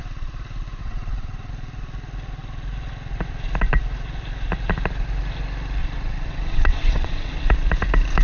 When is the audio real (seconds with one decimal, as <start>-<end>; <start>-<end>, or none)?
0.0-0.8; 1.5-5.8; 7.4-8.2